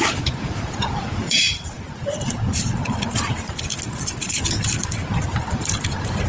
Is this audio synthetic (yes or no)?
yes